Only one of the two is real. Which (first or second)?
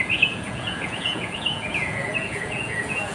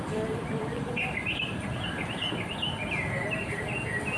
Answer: second